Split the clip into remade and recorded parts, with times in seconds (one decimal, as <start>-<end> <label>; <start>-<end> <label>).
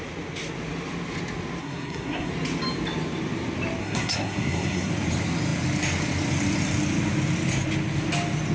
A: 0.0-1.6 recorded; 1.6-2.3 remade; 2.3-3.8 recorded; 3.8-4.9 remade; 4.9-8.5 recorded